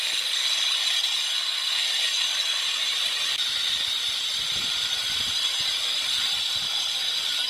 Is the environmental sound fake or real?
real